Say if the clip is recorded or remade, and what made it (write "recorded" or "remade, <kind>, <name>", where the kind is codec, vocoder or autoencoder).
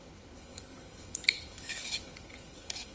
remade, codec, HILCodec